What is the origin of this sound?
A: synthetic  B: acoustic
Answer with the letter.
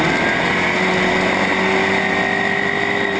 B